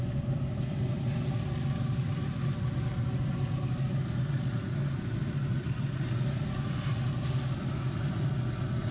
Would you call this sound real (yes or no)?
yes